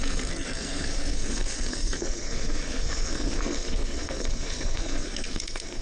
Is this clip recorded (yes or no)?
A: no